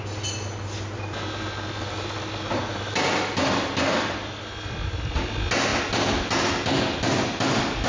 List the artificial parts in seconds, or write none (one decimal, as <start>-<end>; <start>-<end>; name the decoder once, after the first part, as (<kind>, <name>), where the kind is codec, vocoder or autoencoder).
none